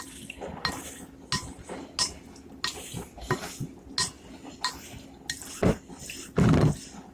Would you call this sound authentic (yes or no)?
yes